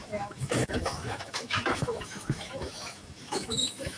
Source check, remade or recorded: remade